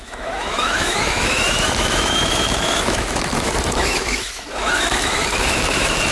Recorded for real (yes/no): no